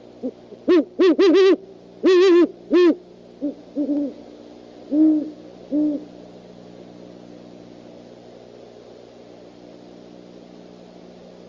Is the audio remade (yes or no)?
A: no